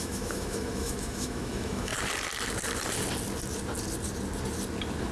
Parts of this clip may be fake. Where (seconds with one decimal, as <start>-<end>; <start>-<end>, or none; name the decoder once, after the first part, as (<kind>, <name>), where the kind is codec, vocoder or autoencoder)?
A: 0.0-1.9 (autoencoder, DAC-VAE)